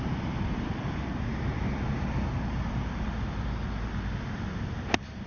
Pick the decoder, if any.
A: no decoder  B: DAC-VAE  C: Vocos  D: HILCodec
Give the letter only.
A